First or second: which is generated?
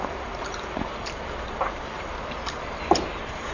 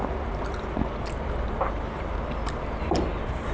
first